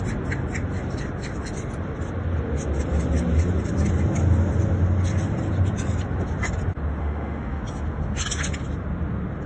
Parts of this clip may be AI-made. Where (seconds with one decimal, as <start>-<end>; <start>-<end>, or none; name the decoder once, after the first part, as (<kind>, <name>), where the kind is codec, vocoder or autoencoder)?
7.0-7.6 (autoencoder, DAC-VAE)